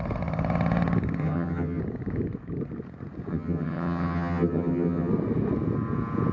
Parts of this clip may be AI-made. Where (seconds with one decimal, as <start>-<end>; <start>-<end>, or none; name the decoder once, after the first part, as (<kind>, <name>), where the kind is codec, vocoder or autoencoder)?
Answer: 1.2-1.8 (vocoder, HiFi-GAN); 3.3-5.1